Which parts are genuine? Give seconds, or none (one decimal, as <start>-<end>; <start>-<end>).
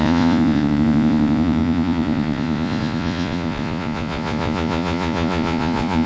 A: none